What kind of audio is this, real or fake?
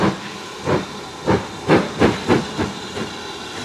real